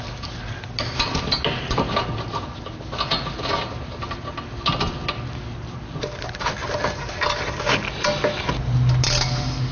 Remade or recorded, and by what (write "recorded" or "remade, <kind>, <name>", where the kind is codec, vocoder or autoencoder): recorded